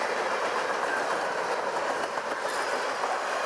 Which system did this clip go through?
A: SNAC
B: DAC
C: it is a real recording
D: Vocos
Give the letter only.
C